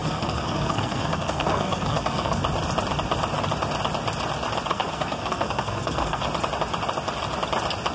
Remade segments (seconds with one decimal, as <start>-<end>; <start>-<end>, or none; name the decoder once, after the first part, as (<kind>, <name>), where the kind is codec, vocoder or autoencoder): 0.0-2.4 (codec, SNAC); 4.7-6.2

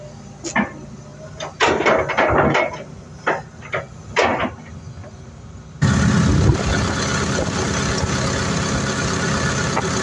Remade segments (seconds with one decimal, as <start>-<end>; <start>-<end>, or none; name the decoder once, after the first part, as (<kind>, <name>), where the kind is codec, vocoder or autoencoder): none

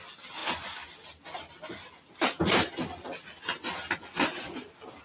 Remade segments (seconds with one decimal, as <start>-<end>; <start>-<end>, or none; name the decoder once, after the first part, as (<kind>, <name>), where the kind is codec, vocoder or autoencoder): none

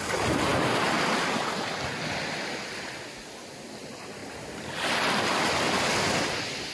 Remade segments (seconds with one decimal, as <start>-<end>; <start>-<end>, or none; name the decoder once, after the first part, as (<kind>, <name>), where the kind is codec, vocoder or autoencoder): none